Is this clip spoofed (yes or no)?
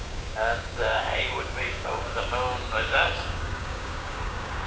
yes